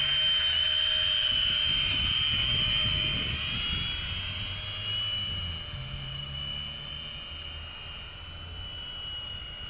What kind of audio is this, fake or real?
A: real